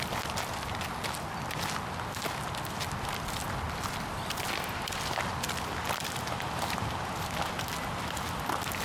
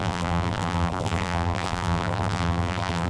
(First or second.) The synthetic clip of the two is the second